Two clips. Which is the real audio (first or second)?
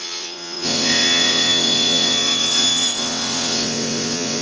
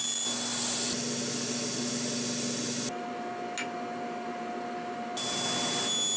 second